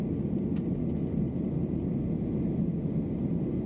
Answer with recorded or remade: recorded